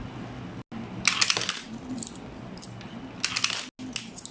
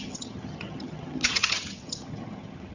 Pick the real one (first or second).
first